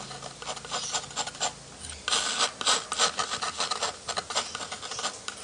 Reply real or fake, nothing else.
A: real